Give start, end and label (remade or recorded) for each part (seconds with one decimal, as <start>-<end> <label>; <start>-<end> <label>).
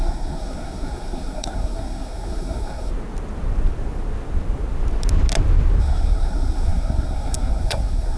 0.0-2.9 remade; 2.9-5.8 recorded; 5.8-8.2 remade